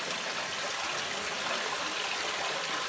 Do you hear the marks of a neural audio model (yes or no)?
no